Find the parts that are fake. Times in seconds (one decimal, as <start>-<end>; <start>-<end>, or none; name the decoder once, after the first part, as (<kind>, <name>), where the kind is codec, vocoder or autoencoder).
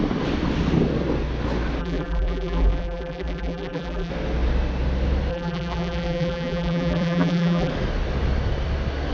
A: 1.8-4.1 (vocoder, BigVGAN v2); 5.3-7.7